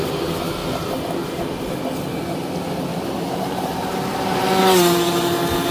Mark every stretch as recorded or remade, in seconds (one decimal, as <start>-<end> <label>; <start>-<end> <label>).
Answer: 0.0-2.9 recorded; 2.9-4.4 remade; 4.4-5.7 recorded